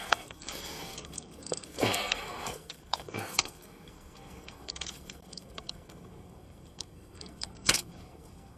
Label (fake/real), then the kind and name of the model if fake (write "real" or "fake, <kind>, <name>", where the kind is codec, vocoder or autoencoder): fake, codec, SNAC